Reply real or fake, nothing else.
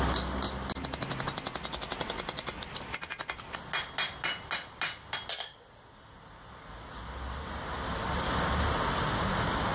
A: real